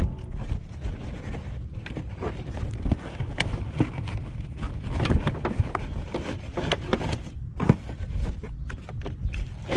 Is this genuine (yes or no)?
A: yes